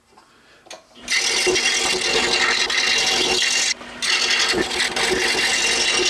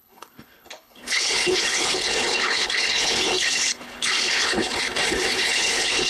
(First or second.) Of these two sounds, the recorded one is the first